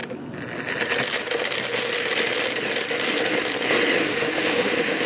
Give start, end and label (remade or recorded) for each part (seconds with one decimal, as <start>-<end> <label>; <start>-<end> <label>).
0.0-4.1 recorded; 4.1-5.1 remade